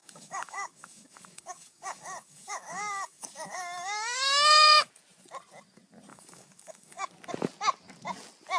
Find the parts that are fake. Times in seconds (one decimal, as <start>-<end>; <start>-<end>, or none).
0.0-4.9; 6.1-7.1